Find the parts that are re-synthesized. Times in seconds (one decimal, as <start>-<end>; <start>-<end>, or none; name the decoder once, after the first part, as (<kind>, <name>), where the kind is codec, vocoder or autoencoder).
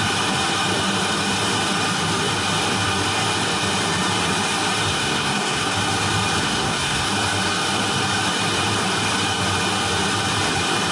4.9-5.7 (codec, SNAC); 6.4-7.1